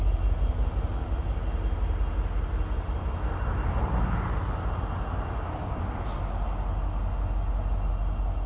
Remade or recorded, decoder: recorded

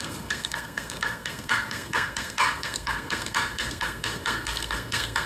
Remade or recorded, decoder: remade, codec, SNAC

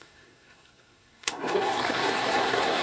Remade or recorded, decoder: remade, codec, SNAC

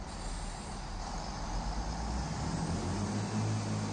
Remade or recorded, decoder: recorded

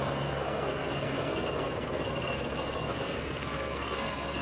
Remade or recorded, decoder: remade, codec, SNAC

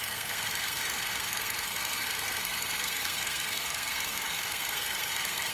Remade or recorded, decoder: remade, codec, SNAC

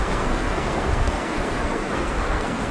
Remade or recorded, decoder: remade, codec, SNAC